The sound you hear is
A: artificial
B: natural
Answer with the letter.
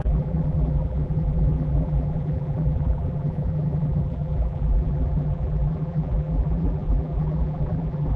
A